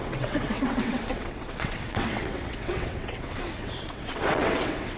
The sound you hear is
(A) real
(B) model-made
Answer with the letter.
B